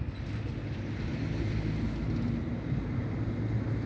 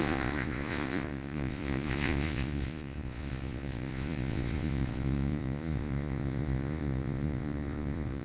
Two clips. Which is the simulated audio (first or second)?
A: second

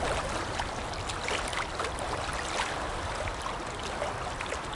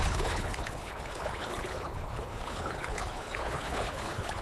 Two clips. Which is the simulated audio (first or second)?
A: second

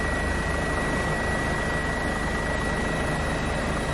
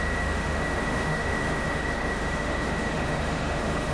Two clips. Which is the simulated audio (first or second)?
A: second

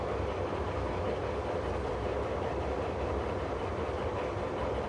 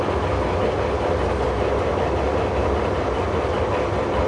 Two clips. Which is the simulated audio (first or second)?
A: first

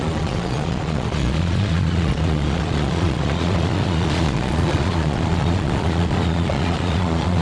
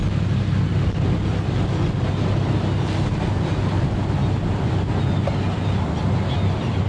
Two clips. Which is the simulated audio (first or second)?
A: first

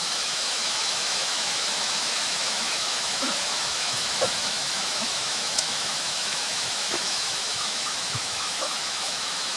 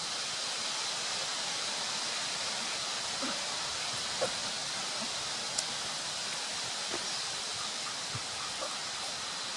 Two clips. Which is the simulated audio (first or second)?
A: first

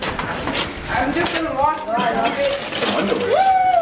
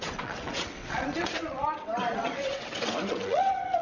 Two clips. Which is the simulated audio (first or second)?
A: second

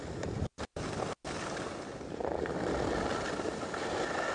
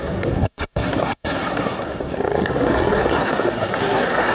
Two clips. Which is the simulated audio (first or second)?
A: second